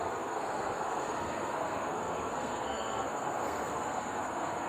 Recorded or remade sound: remade